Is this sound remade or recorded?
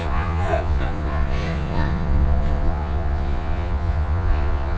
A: remade